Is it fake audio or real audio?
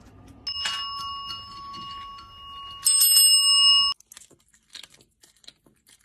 real